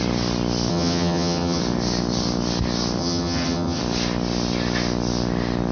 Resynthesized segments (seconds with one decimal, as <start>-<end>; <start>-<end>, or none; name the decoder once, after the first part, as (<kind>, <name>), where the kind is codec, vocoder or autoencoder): 0.7-1.6 (vocoder, HiFi-GAN); 3.0-3.8